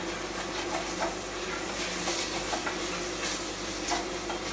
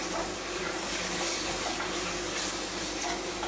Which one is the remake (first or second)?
second